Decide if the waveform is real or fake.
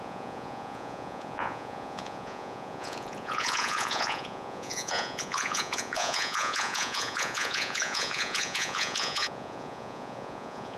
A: fake